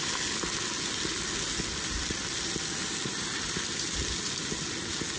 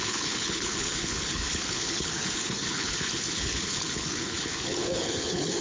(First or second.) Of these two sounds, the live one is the first